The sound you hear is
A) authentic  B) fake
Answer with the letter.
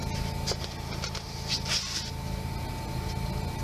A